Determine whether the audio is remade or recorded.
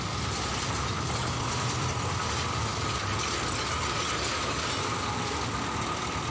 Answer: recorded